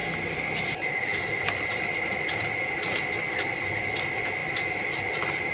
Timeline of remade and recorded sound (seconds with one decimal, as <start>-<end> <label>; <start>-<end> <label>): 0.0-5.5 recorded